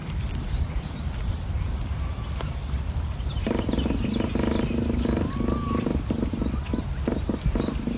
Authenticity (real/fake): real